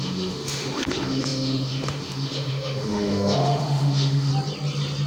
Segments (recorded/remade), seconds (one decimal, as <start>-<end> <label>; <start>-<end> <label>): 0.0-4.3 remade; 4.3-5.1 recorded